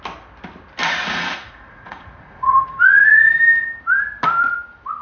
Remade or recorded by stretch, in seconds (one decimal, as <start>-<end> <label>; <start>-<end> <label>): 0.0-0.8 recorded; 0.8-3.3 remade; 3.3-5.0 recorded